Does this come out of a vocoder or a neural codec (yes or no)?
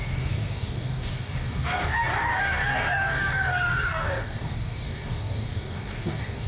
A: yes